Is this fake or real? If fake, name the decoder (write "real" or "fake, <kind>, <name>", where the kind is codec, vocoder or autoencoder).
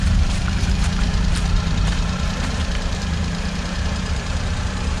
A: fake, vocoder, BigVGAN v2